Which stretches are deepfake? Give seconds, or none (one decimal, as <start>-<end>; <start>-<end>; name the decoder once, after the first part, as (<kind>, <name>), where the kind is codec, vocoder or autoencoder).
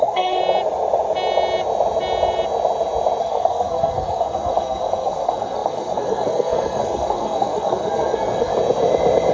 0.0-0.4 (codec, SNAC); 3.2-8.5